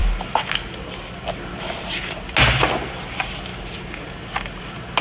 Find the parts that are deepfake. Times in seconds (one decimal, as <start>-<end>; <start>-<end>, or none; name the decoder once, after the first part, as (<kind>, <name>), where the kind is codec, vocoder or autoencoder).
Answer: none